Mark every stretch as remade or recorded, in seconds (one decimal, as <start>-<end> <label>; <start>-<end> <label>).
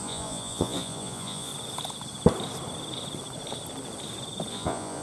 0.0-1.5 remade; 1.5-4.5 recorded; 4.5-5.0 remade